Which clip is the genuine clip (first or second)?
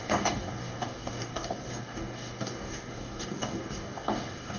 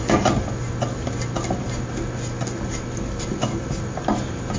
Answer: second